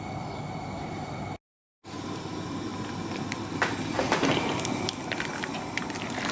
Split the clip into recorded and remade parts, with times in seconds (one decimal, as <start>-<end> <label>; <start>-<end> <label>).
0.0-6.3 recorded